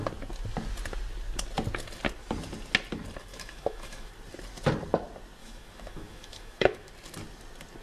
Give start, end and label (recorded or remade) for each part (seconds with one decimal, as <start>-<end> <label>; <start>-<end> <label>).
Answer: 0.0-3.3 recorded; 3.3-4.1 remade; 4.1-5.4 recorded; 5.4-6.9 remade; 6.9-7.8 recorded